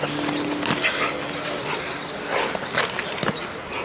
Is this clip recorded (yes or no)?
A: yes